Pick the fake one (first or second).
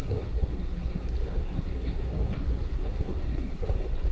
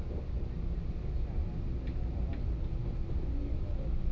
first